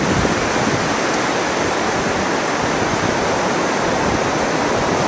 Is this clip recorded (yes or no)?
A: yes